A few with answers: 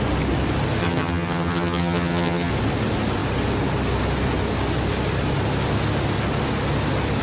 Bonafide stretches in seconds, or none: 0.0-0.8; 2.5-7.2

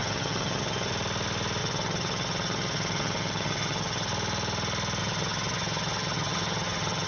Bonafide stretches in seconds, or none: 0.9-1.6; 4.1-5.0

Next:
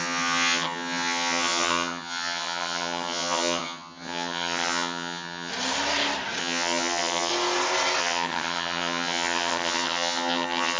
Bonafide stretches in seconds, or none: 5.5-6.4; 7.3-8.0

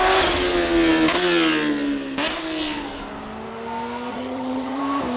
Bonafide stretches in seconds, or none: 0.0-4.1; 4.8-5.2